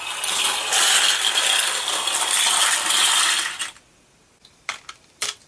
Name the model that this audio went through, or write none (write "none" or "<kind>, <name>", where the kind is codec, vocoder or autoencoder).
none